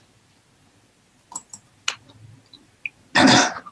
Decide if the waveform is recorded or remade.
recorded